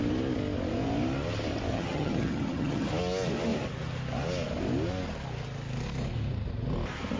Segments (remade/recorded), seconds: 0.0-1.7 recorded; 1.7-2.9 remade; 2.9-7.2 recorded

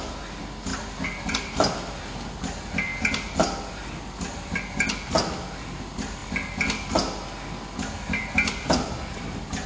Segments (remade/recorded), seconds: 0.0-9.7 recorded

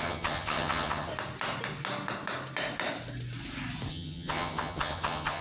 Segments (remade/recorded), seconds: 0.0-1.1 remade; 1.1-3.9 recorded; 3.9-5.4 remade

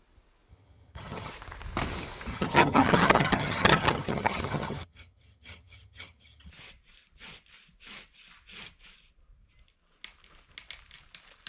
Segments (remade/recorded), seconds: 0.0-0.5 recorded; 0.5-1.3 remade; 1.3-2.3 recorded; 2.3-6.5 remade; 6.5-11.5 recorded

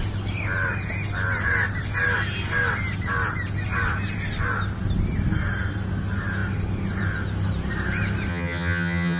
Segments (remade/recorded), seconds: 0.0-8.3 recorded; 8.3-9.2 remade

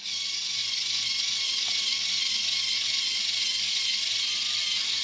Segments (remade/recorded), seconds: 0.0-5.0 recorded

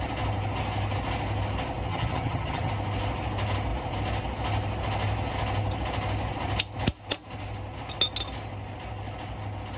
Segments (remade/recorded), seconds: 0.0-1.9 recorded; 1.9-2.7 remade; 2.7-9.8 recorded

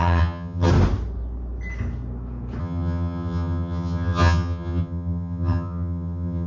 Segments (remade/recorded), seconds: 0.0-0.7 remade; 0.7-2.6 recorded; 2.6-6.5 remade